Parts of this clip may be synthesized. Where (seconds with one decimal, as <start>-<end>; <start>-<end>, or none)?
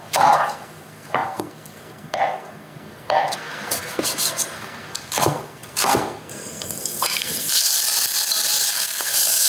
0.0-7.7; 8.7-9.5